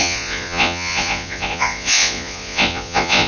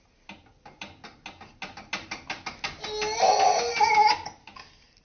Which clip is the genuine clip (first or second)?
second